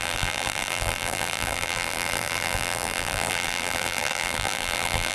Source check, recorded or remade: remade